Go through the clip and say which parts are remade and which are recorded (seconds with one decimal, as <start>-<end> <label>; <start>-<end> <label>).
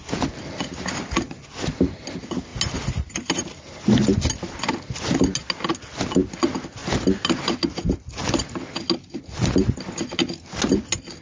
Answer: 0.0-11.2 recorded